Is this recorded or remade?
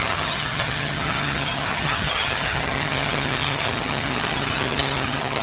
remade